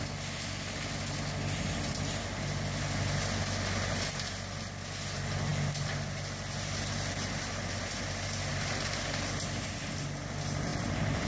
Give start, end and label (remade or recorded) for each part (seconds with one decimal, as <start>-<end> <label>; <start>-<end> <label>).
0.0-10.7 recorded; 10.7-11.3 remade